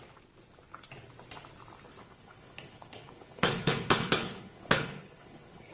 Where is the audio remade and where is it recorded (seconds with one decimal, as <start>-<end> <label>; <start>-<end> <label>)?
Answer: 0.0-2.0 recorded; 2.0-5.7 remade